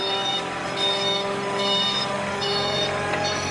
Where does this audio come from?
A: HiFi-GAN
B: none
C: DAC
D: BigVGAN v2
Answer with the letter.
C